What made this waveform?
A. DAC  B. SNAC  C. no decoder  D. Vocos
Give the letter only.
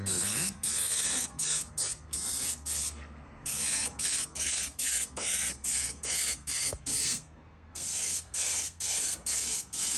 B